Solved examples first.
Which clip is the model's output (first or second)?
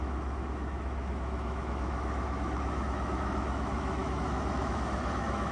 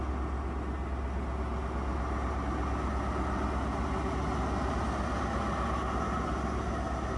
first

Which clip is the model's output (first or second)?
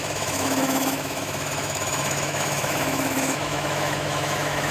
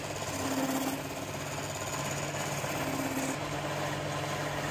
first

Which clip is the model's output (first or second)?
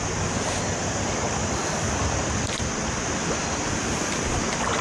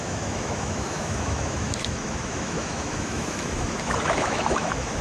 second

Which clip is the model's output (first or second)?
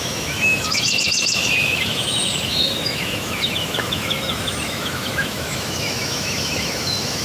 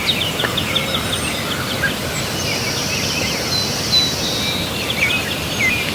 first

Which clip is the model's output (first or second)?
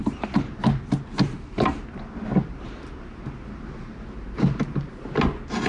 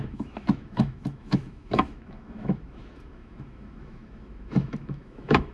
second